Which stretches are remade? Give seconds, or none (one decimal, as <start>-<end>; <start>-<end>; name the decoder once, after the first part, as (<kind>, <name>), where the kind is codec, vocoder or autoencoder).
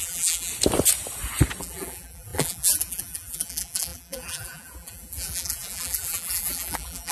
0.0-0.5 (vocoder, BigVGAN v2); 1.6-7.1